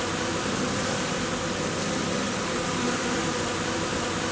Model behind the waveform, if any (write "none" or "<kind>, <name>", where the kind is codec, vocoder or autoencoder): none